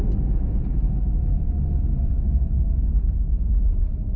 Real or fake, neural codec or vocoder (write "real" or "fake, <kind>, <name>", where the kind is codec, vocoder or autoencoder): real